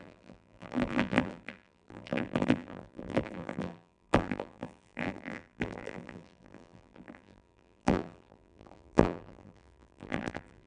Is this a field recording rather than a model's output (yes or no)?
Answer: no